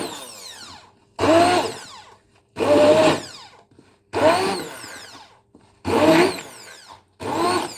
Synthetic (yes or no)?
no